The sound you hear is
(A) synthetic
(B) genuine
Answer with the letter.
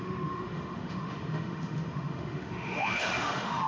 A